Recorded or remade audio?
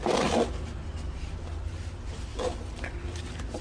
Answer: recorded